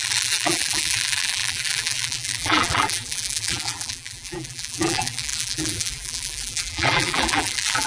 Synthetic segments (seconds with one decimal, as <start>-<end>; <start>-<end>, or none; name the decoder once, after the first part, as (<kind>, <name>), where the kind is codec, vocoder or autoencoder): 0.0-7.9 (vocoder, BigVGAN v2)